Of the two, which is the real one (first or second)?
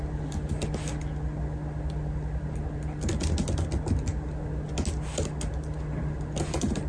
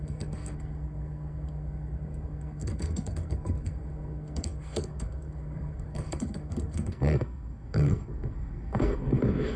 first